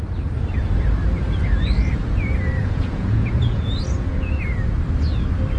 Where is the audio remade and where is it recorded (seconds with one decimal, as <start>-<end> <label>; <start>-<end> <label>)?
0.0-2.6 recorded; 2.6-4.3 remade; 4.3-5.6 recorded